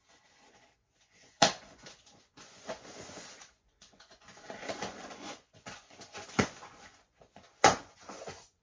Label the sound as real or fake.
fake